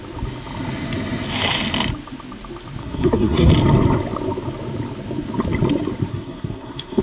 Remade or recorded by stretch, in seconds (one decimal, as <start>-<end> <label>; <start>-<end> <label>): 0.0-2.8 recorded; 2.8-3.5 remade; 3.5-6.1 recorded; 6.1-7.0 remade